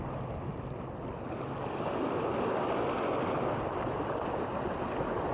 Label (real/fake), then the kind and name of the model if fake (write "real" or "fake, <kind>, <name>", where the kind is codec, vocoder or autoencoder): real